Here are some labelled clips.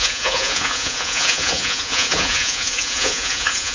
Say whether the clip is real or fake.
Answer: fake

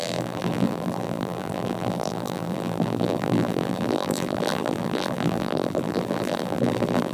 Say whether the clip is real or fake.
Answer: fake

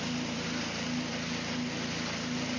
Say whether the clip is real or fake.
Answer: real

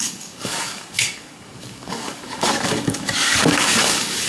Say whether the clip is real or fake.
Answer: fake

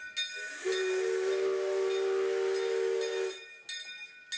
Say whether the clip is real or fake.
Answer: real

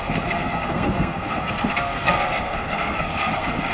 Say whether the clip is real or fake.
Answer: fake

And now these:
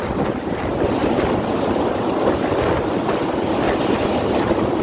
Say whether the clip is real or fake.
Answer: real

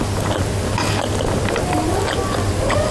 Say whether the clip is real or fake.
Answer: real